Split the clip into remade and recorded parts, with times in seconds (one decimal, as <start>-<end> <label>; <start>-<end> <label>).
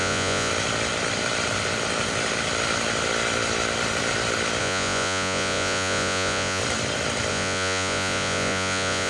0.0-0.5 remade; 0.5-4.6 recorded; 4.6-6.6 remade; 6.6-7.3 recorded; 7.3-9.1 remade